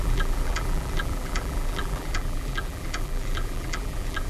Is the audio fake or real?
fake